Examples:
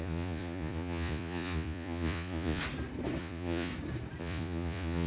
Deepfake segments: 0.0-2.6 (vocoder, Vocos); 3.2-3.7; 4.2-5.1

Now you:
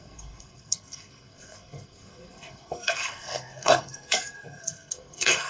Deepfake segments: 0.0-5.5 (codec, SNAC)